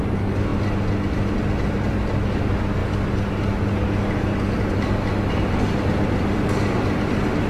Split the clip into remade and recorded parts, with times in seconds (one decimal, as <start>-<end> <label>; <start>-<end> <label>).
0.0-7.5 recorded